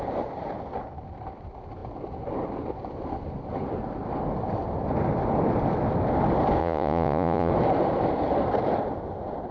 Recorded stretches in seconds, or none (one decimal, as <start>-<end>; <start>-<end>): 0.0-6.6; 7.5-9.5